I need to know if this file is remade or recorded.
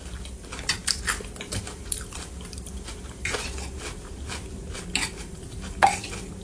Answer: remade